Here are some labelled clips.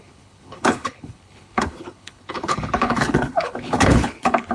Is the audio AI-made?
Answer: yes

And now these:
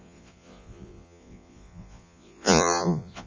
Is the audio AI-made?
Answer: yes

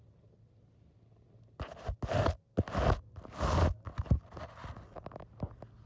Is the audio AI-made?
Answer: no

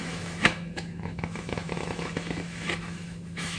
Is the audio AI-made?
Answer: yes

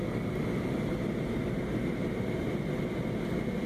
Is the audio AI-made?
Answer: no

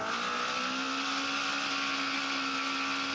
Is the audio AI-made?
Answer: no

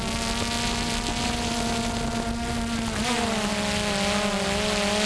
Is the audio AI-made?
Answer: no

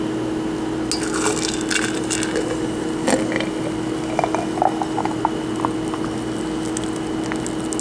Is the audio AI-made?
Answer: no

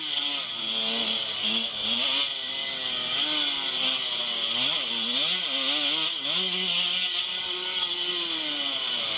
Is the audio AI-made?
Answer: no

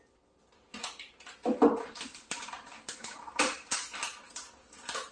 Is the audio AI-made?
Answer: no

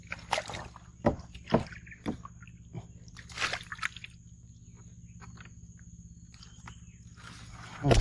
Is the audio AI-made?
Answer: no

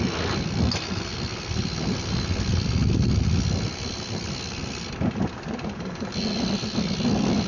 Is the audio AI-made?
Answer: no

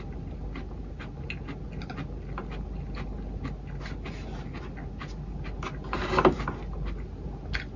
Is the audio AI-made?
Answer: no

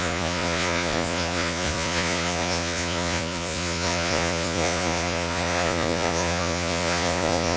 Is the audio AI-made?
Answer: yes